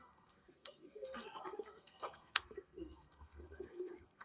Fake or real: fake